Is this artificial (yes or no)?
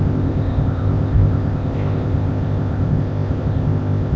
yes